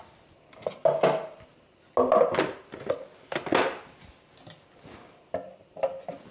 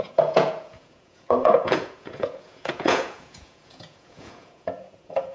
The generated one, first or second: second